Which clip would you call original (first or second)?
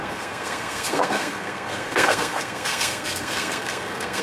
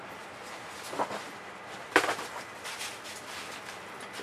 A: second